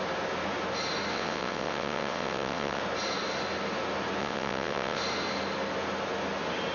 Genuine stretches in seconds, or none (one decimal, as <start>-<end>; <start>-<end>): 0.0-1.1; 2.8-4.2; 5.0-6.7